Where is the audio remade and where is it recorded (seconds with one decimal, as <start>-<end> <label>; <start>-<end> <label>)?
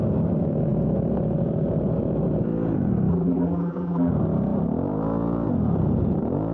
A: 0.0-3.1 recorded; 3.1-4.1 remade; 4.1-6.5 recorded